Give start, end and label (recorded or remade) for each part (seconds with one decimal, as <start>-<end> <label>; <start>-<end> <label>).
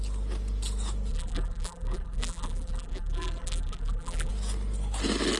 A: 0.0-1.1 recorded; 1.1-4.3 remade; 4.3-5.4 recorded